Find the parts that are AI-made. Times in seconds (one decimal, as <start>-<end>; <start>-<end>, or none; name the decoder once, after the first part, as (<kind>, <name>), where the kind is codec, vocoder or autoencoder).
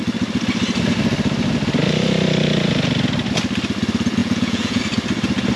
4.2-4.8 (vocoder, Vocos)